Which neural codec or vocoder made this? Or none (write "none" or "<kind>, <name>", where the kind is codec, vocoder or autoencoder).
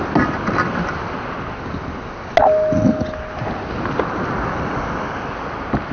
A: none